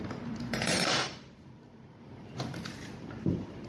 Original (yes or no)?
no